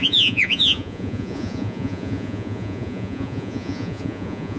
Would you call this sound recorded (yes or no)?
no